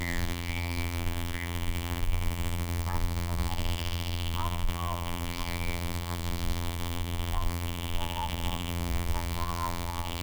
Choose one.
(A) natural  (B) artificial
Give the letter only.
B